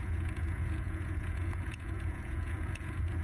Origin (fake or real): fake